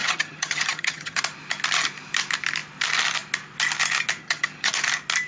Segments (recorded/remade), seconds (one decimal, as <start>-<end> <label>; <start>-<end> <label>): 0.0-1.2 remade; 1.2-4.2 recorded; 4.2-4.7 remade; 4.7-5.3 recorded

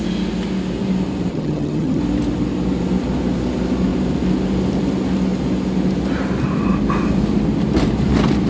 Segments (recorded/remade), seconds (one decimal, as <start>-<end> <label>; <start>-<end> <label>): 0.0-1.3 recorded; 1.3-2.0 remade; 2.0-8.5 recorded

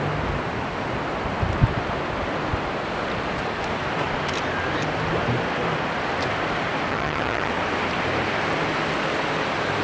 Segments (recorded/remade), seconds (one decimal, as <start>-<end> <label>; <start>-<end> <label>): 0.0-6.9 recorded; 6.9-7.5 remade; 7.5-9.8 recorded

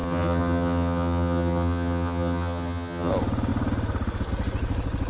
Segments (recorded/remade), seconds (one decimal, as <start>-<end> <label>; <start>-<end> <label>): 0.0-3.1 remade; 3.1-5.1 recorded

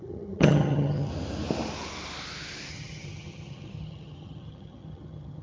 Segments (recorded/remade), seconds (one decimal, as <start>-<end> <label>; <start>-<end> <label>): 0.0-1.1 remade; 1.1-2.7 recorded; 2.7-5.4 remade

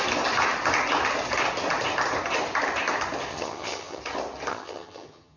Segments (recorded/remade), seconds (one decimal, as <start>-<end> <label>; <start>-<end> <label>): 0.0-3.3 recorded; 3.3-4.0 remade; 4.0-4.5 recorded; 4.5-5.4 remade